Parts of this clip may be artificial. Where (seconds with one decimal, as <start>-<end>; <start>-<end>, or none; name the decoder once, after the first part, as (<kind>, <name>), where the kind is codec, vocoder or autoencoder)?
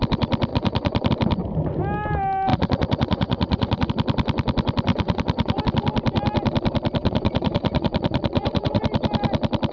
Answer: 0.5-1.1 (vocoder, Vocos); 2.5-3.9; 4.9-5.6; 7.0-8.8